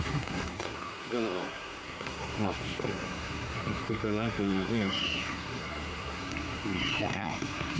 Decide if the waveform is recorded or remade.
remade